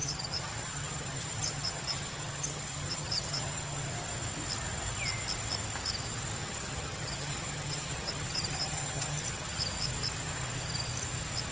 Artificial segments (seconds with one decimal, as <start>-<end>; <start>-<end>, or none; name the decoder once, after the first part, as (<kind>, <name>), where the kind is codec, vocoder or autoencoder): 0.0-3.9 (vocoder, HiFi-GAN); 6.4-9.6